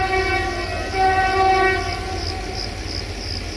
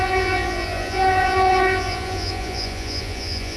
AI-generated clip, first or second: second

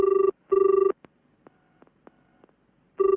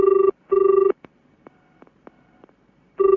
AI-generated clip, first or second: second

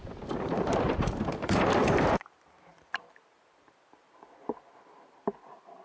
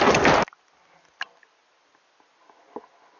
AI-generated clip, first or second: first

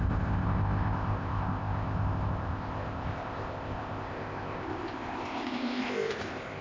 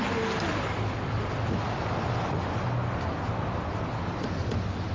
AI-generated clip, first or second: first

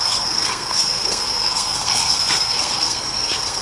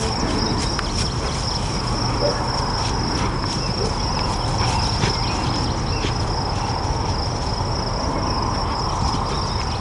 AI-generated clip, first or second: first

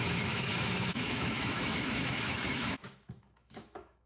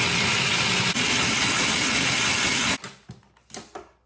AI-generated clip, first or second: first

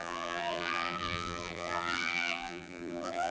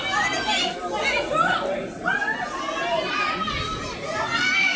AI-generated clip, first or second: first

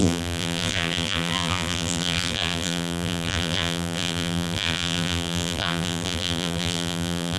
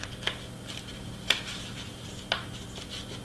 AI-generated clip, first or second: first